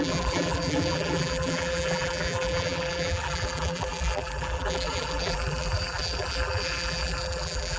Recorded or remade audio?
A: remade